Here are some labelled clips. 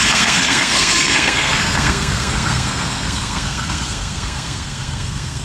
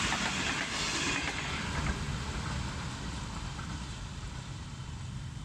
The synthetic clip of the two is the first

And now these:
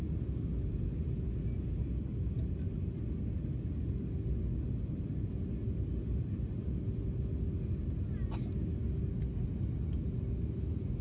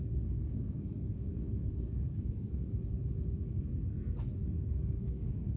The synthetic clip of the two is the second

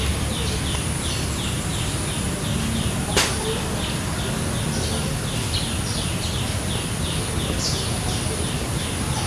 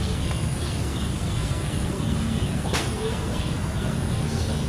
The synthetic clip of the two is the second